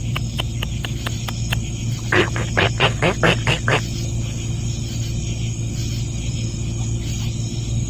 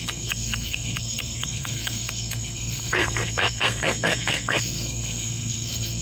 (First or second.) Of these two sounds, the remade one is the second